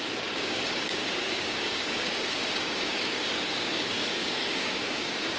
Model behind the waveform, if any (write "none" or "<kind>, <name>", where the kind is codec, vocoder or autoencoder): codec, DAC